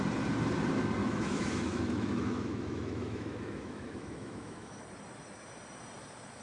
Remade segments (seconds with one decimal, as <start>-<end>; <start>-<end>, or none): 1.0-4.8